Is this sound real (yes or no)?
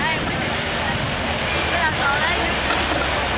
yes